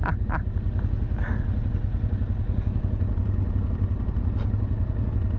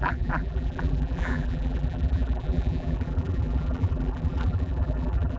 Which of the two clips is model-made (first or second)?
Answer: second